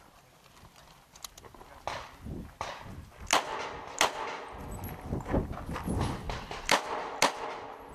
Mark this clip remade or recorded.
recorded